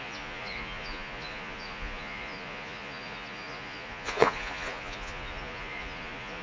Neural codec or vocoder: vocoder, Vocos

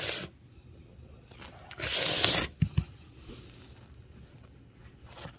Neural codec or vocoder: none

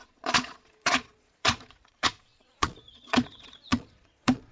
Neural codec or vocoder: vocoder, Vocos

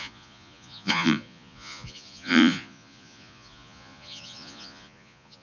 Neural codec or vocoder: vocoder, Vocos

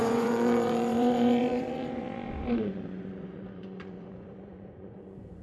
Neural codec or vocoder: vocoder, Vocos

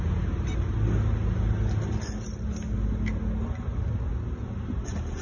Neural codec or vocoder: none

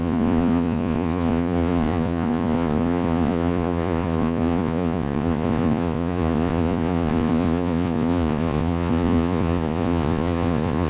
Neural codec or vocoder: vocoder, Vocos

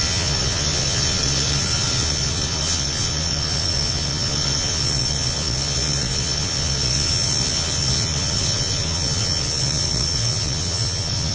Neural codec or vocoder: vocoder, Vocos